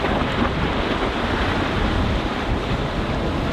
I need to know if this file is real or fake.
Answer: real